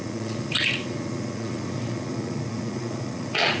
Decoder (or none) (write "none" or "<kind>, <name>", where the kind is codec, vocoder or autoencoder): vocoder, Vocos